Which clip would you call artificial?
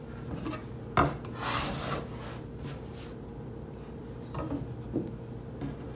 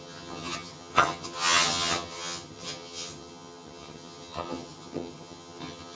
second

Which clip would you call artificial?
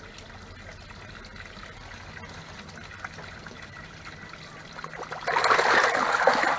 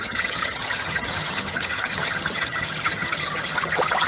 second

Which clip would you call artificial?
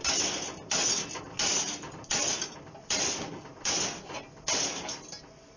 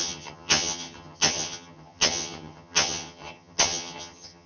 second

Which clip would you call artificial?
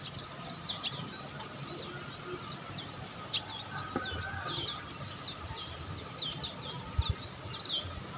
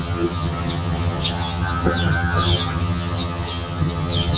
second